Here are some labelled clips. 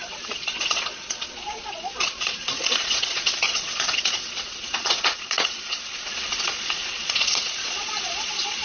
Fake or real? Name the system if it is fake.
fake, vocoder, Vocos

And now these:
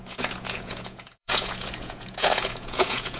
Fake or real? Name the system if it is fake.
fake, vocoder, Vocos